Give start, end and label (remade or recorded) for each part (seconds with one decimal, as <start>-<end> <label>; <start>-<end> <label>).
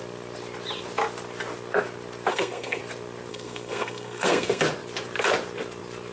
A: 0.0-2.3 recorded; 2.3-2.8 remade; 2.8-3.3 recorded; 3.3-4.6 remade; 4.6-6.1 recorded